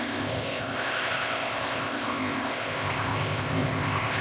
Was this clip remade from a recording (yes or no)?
yes